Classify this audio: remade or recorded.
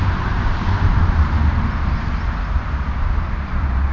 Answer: remade